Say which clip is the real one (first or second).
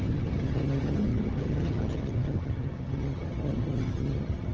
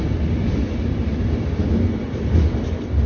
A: second